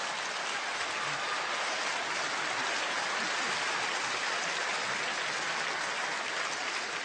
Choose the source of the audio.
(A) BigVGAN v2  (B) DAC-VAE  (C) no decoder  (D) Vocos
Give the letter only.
C